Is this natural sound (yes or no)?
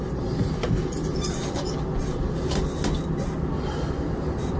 yes